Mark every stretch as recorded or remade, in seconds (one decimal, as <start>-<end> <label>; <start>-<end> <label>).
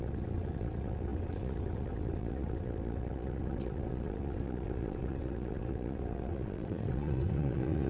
0.0-7.9 remade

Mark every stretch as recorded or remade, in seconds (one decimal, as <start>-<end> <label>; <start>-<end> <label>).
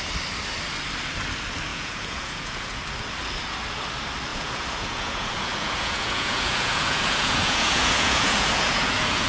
0.0-1.7 recorded; 1.7-2.8 remade; 2.8-4.3 recorded; 4.3-9.3 remade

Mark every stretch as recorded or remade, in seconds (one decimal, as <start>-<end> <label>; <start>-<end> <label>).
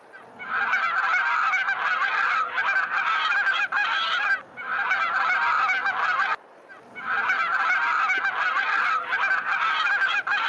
0.0-10.5 recorded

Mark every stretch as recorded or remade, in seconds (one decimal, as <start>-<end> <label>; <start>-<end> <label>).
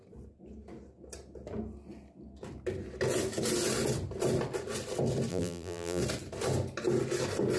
0.0-5.3 recorded; 5.3-6.0 remade; 6.0-7.6 recorded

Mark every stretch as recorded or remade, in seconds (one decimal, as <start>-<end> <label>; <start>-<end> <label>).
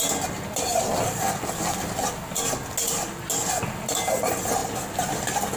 0.0-0.7 recorded; 0.7-1.9 remade; 1.9-5.6 recorded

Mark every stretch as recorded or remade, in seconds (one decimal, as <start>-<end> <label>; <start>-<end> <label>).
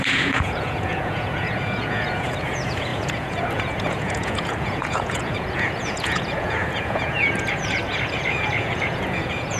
0.0-9.6 remade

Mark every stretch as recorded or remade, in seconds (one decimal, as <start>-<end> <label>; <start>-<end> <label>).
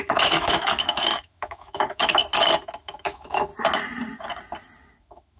0.0-2.2 remade; 2.2-2.8 recorded; 2.8-3.5 remade; 3.5-5.0 recorded; 5.0-5.4 remade